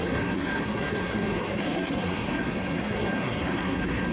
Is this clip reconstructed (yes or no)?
yes